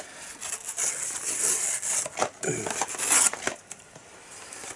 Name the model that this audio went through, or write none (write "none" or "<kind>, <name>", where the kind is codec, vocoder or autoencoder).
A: none